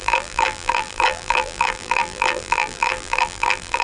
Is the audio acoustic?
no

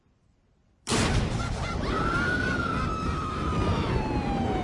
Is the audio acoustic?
no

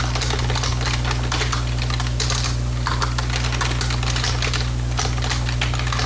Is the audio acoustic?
yes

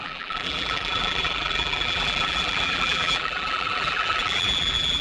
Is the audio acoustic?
no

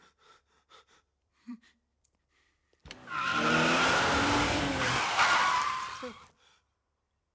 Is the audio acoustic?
no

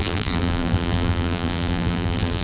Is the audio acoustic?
no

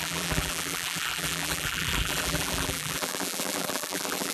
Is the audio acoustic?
no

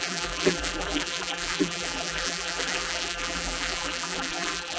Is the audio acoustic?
no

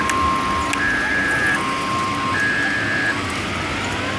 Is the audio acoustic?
yes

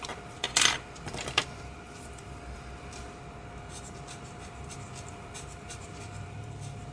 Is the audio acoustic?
no